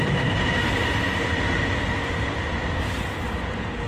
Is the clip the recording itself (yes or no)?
yes